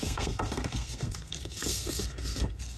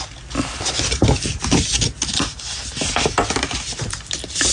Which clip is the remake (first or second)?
first